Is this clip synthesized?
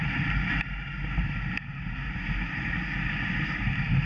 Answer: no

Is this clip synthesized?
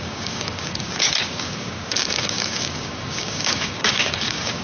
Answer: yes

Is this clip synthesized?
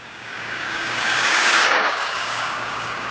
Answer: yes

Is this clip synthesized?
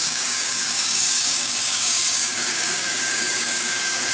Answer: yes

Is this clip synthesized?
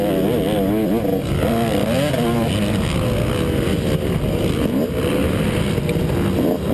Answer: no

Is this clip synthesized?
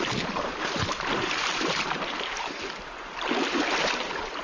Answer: no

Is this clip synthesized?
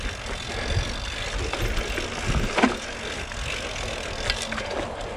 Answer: no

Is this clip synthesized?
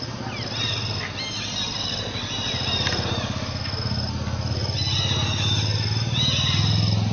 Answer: no